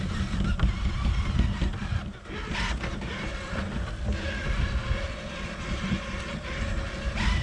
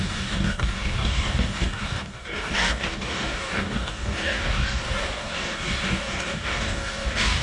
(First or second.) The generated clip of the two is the second